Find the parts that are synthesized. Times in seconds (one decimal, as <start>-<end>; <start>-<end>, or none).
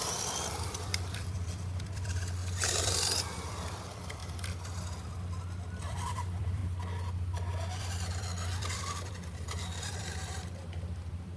0.0-4.2; 5.8-6.6; 7.8-11.4